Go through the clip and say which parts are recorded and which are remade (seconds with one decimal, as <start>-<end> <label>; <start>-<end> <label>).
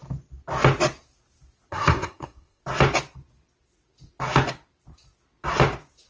0.0-1.7 recorded; 1.7-2.6 remade; 2.6-6.1 recorded